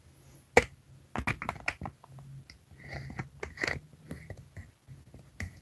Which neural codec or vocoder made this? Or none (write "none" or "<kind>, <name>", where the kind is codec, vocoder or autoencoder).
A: none